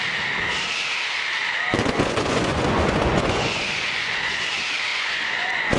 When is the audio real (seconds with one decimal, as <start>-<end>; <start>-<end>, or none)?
0.0-1.8; 4.5-4.9